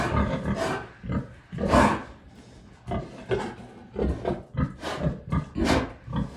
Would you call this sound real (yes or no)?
yes